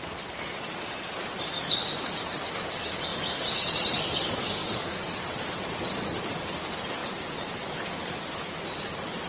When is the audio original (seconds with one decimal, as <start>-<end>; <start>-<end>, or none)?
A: 0.0-3.1; 4.0-4.6; 5.6-9.3